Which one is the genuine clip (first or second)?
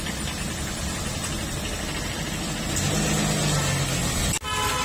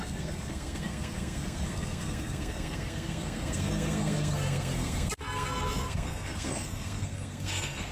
first